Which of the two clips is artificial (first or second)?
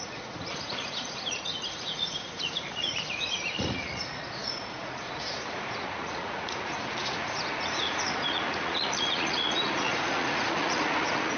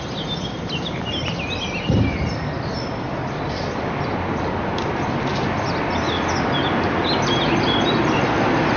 first